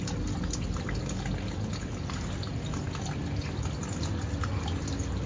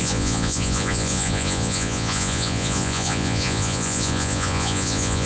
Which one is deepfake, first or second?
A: second